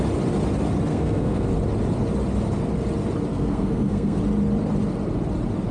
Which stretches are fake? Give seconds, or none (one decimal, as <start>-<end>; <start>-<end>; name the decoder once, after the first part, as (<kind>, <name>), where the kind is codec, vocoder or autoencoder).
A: 0.9-1.5 (codec, SNAC); 3.3-4.2